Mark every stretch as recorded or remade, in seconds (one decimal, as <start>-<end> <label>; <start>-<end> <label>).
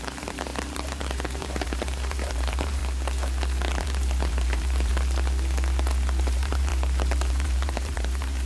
0.0-2.8 remade; 2.8-3.8 recorded; 3.8-4.9 remade; 4.9-6.2 recorded; 6.2-6.7 remade; 6.7-7.3 recorded; 7.3-8.5 remade